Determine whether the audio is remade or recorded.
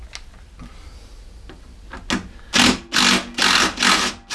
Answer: recorded